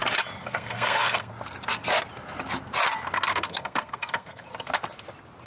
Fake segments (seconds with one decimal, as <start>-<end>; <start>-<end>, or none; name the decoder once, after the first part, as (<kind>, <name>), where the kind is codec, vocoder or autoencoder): 0.4-1.3 (codec, SNAC); 3.3-4.4